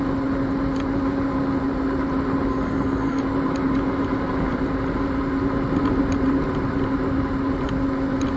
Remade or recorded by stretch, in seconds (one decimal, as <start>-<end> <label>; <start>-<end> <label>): 0.0-2.5 recorded; 2.5-3.2 remade; 3.2-8.4 recorded